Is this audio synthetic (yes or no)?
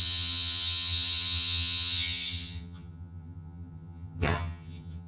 yes